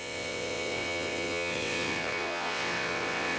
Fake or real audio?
fake